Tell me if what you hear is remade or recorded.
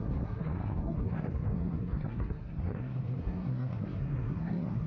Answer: remade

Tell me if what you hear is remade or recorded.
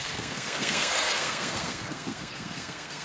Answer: remade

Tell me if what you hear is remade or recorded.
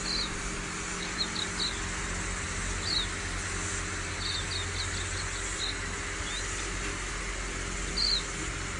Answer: recorded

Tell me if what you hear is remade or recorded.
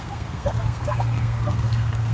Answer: remade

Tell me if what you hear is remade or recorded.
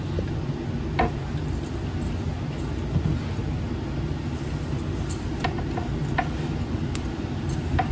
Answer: recorded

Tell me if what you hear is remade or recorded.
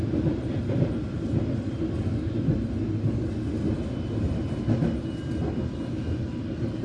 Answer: recorded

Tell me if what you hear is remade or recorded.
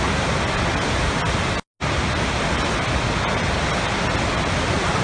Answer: recorded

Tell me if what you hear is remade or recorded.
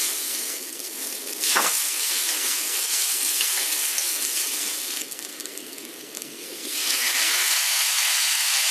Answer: remade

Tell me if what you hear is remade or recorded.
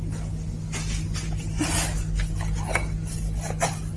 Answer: recorded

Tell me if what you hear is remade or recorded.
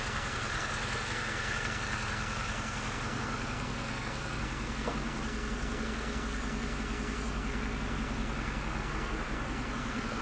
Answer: remade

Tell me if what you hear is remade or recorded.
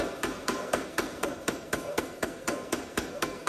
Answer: remade